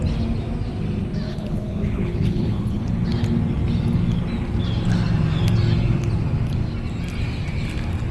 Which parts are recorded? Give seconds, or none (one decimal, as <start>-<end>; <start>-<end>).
0.0-1.3; 2.8-8.1